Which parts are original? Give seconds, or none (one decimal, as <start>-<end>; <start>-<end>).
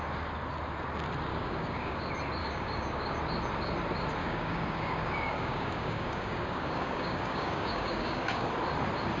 0.0-1.3; 2.0-2.4; 3.2-4.2; 8.5-9.2